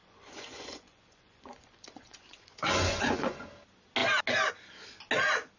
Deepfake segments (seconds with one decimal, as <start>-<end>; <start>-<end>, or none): 0.0-3.4